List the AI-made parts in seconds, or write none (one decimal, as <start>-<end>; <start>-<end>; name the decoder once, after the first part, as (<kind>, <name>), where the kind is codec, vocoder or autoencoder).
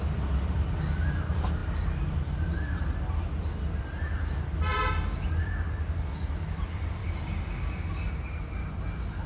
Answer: 7.0-7.6 (codec, DAC)